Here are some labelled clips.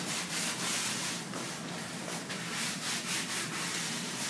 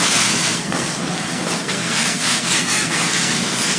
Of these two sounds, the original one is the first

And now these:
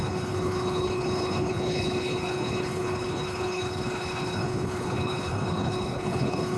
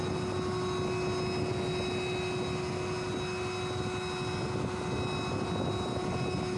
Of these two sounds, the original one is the second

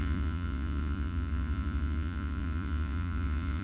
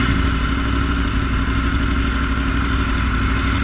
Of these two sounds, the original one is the second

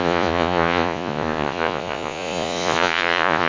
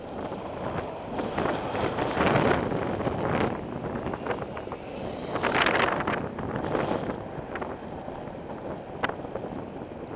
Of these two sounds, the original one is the second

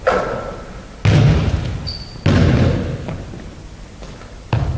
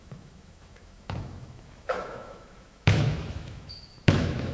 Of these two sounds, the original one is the first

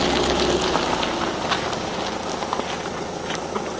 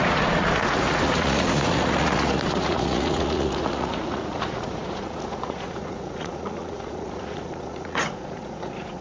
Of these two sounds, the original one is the first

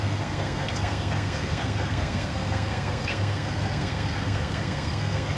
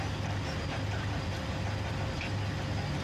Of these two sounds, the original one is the second